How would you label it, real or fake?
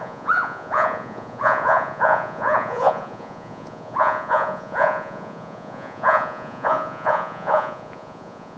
fake